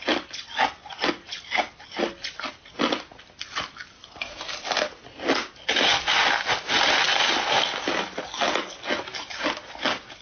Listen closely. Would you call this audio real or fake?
real